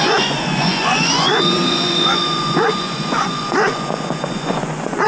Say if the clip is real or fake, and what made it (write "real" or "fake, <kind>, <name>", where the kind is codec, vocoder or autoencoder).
fake, vocoder, Vocos